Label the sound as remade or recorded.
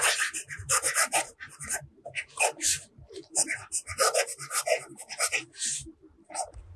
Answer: remade